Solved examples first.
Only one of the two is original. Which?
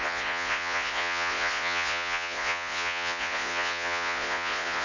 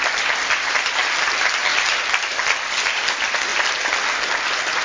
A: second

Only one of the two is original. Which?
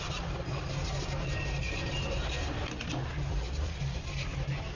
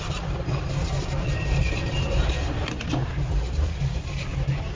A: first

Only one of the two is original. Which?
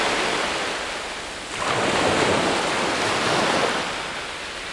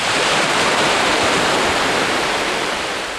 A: first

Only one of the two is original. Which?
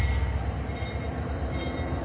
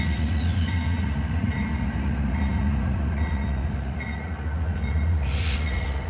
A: first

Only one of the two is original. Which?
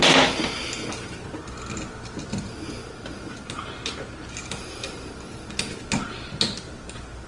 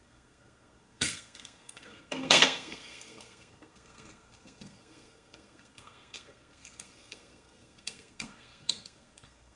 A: first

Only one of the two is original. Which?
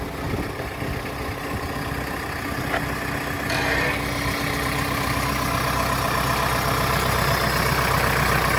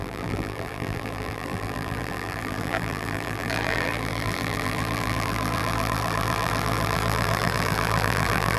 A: first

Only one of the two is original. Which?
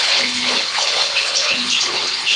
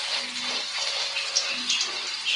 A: second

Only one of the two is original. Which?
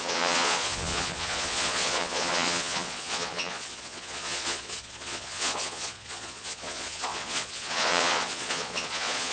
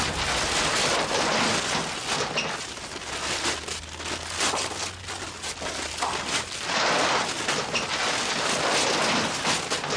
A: second